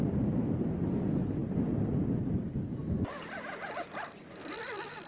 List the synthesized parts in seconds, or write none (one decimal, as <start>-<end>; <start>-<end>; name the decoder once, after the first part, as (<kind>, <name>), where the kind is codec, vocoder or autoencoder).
none